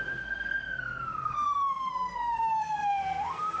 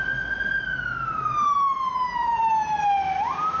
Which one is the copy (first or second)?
first